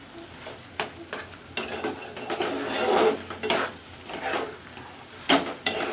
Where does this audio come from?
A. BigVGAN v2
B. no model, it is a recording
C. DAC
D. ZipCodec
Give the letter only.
B